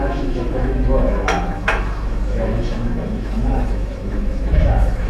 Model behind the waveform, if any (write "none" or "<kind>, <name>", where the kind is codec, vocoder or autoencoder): autoencoder, DAC-VAE